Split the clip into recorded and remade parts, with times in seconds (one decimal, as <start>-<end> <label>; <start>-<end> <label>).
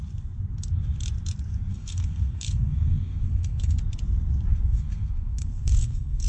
0.0-1.7 recorded; 1.7-3.8 remade; 3.8-4.5 recorded; 4.5-6.3 remade